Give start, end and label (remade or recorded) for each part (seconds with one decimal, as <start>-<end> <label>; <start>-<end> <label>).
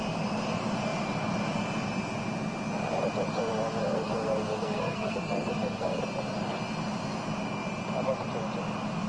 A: 0.0-3.8 recorded; 3.8-6.0 remade; 6.0-9.1 recorded